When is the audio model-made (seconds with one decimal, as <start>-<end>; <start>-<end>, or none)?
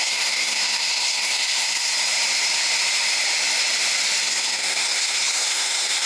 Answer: 0.0-1.9; 4.2-6.1